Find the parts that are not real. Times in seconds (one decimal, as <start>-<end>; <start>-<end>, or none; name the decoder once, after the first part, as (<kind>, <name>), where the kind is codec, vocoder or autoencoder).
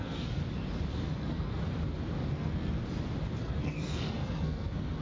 0.0-0.4 (codec, SNAC); 1.1-1.6; 2.3-2.8; 3.4-5.0